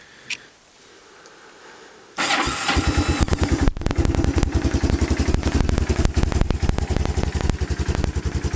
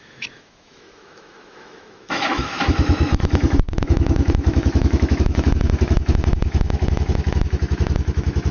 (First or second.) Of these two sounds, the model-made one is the second